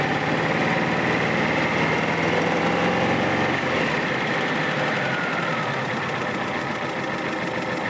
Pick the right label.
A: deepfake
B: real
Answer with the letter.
B